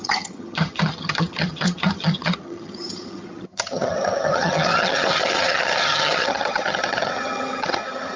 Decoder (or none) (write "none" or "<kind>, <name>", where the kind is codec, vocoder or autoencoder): vocoder, HiFi-GAN